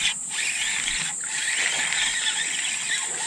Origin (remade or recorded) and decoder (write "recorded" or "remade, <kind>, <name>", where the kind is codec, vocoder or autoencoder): recorded